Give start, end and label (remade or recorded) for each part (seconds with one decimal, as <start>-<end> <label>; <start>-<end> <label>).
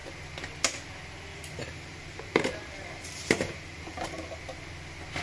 0.0-1.3 recorded; 1.3-4.4 remade; 4.4-5.2 recorded